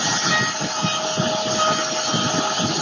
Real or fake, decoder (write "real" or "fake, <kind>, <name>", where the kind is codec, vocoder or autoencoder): real